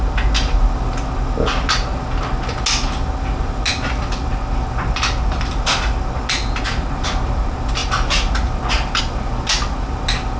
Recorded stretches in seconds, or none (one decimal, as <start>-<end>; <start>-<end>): 0.0-10.4